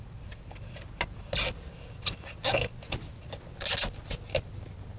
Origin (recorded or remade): recorded